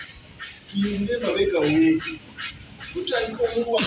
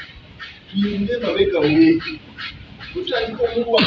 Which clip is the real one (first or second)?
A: first